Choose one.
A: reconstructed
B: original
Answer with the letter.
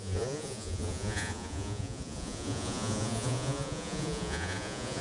A